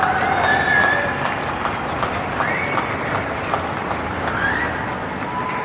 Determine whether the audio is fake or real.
real